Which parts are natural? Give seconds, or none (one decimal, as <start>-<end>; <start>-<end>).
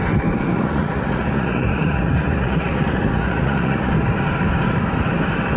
0.0-0.5; 3.9-5.6